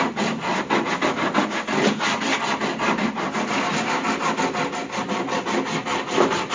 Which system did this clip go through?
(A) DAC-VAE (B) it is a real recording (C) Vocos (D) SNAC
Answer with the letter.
B